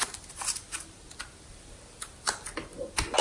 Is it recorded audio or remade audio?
recorded